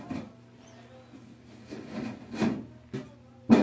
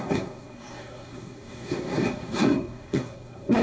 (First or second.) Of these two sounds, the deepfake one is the second